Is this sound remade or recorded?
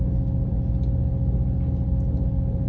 recorded